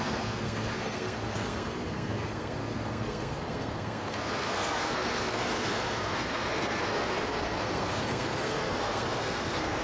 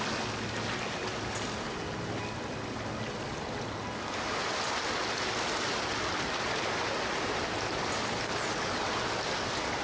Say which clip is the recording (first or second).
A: second